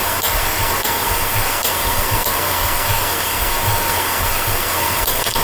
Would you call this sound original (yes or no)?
no